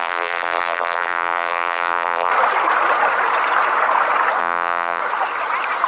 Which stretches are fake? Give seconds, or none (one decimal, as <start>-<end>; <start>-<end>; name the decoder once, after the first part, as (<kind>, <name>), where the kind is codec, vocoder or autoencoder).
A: 0.0-2.3 (vocoder, BigVGAN v2); 4.4-5.0